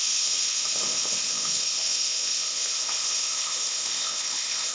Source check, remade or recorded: remade